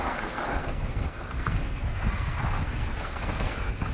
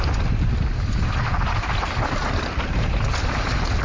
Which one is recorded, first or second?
second